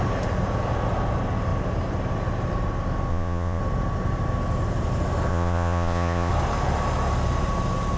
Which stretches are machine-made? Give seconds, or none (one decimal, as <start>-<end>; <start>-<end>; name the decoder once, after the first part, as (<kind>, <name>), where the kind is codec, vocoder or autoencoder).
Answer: 3.1-3.6 (vocoder, Vocos); 5.3-6.3